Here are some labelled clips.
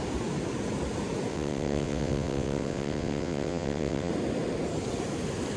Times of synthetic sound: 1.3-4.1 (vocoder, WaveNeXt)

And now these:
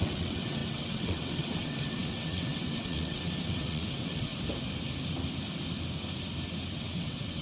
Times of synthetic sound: 0.0-4.3 (vocoder, WaveNeXt); 6.7-7.4

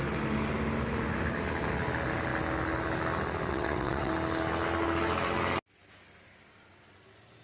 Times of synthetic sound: 3.5-4.1 (vocoder, WaveNeXt)